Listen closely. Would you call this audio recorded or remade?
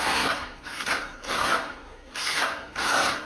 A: remade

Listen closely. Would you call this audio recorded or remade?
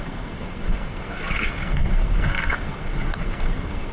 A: remade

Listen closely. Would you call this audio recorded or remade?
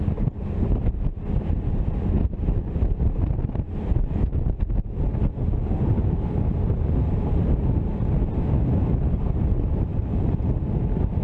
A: recorded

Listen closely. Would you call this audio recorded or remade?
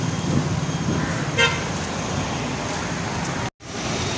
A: recorded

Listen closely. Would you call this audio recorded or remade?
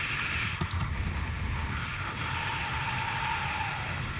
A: recorded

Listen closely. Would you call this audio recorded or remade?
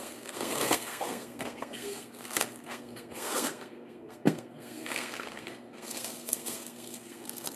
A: remade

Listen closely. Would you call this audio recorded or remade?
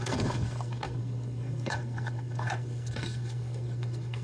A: remade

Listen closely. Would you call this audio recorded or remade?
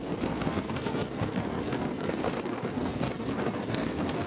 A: remade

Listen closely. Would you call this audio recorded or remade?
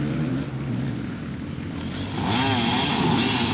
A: recorded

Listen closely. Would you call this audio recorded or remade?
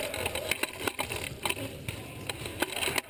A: recorded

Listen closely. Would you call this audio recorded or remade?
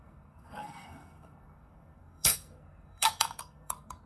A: remade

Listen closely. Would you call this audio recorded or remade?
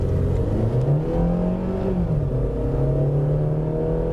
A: recorded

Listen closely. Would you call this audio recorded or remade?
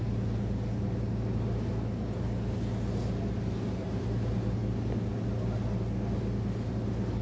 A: recorded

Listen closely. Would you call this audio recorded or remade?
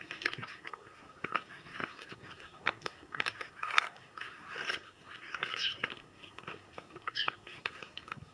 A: remade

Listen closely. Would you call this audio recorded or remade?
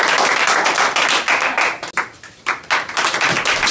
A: recorded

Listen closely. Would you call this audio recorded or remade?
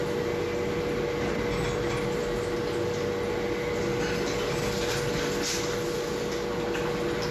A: recorded